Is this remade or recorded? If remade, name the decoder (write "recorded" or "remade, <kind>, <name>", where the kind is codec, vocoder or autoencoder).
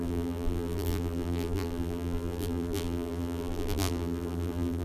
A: remade, vocoder, BigVGAN v2